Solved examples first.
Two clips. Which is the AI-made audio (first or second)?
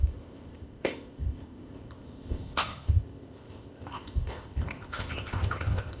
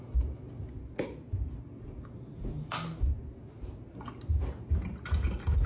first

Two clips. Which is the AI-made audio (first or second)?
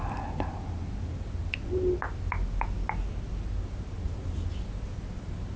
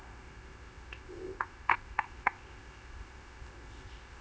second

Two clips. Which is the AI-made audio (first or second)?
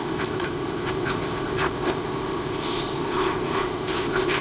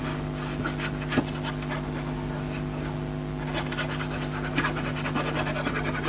first